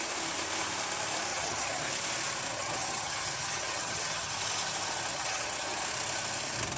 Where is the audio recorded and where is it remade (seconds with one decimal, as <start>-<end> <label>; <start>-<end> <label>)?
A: 0.0-1.3 recorded; 1.3-1.9 remade; 1.9-2.5 recorded; 2.5-4.3 remade; 4.3-5.1 recorded; 5.1-5.8 remade; 5.8-6.8 recorded